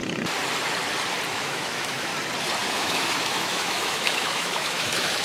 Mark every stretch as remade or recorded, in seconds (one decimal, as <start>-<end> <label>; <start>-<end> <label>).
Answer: 0.0-1.3 recorded; 1.3-2.1 remade; 2.1-2.7 recorded; 2.7-5.2 remade